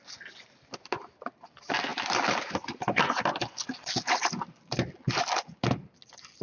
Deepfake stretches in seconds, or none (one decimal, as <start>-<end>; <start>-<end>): none